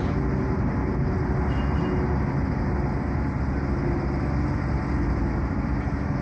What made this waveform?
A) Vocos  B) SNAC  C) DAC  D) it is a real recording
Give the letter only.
D